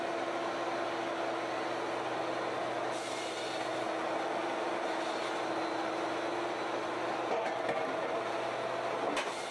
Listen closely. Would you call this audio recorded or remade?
recorded